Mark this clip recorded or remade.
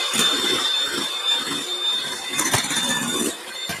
remade